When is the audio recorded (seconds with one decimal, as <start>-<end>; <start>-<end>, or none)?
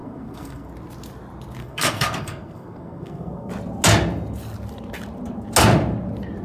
0.7-1.6; 3.5-6.4